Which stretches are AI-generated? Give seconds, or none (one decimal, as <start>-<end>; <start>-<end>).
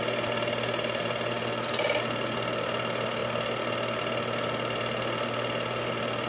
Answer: none